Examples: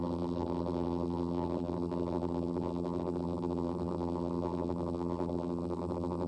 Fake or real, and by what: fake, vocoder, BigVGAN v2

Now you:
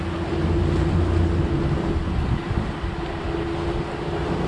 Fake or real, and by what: real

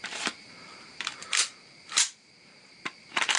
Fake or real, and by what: fake, vocoder, BigVGAN v2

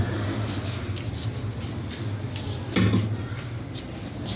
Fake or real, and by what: real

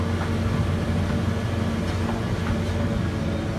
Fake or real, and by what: real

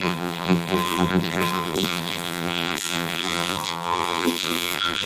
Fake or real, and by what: fake, vocoder, BigVGAN v2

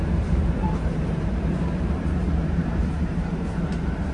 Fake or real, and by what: fake, vocoder, BigVGAN v2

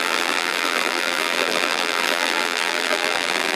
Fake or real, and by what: fake, vocoder, BigVGAN v2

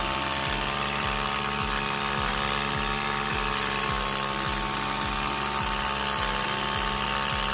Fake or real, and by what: real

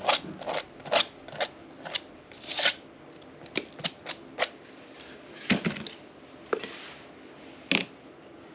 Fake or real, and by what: real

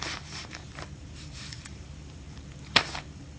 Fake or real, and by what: fake, vocoder, BigVGAN v2